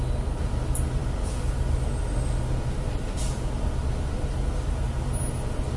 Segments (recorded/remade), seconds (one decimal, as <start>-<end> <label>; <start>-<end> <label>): 0.0-5.8 recorded